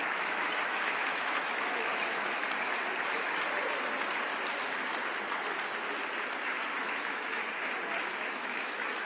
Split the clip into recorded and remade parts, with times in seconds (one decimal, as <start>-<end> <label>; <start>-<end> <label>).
0.0-2.4 remade; 2.4-6.8 recorded; 6.8-7.4 remade; 7.4-8.2 recorded; 8.2-9.1 remade